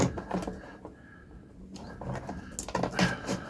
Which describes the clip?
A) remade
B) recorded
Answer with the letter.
B